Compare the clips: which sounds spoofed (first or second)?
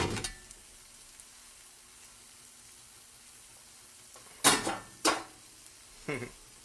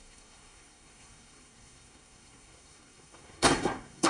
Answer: second